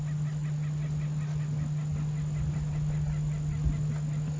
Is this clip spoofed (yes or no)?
no